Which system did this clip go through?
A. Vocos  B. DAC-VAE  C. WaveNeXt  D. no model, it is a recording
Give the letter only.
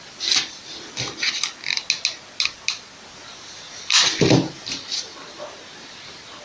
D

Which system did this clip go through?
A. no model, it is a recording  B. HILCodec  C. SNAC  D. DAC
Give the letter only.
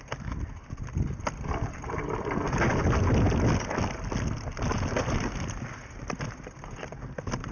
A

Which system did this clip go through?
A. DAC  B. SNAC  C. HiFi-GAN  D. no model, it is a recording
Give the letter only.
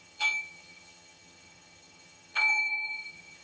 C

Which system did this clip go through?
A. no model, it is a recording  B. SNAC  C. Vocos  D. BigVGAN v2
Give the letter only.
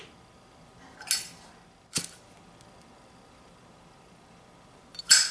A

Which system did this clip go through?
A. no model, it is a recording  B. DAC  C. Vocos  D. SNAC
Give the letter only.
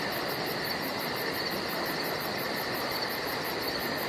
A